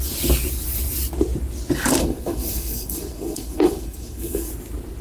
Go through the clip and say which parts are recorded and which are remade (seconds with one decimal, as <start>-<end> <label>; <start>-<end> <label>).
0.0-2.0 recorded; 2.0-4.5 remade; 4.5-5.0 recorded